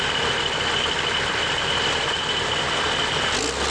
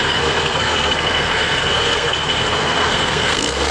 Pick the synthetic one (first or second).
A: second